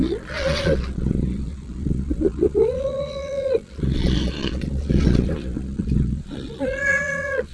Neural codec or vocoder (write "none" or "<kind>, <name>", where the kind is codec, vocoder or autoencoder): vocoder, Vocos